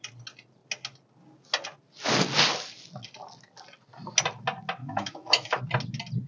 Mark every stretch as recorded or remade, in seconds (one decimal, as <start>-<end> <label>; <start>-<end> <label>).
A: 0.0-4.8 recorded; 4.8-5.6 remade; 5.6-6.3 recorded